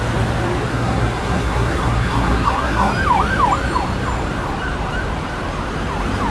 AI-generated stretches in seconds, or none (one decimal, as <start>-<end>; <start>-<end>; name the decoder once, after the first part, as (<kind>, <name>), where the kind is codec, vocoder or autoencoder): 0.7-2.9 (codec, SNAC)